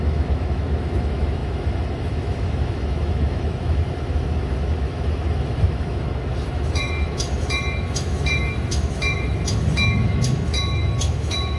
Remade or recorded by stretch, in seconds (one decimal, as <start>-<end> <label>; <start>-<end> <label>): 0.0-11.6 remade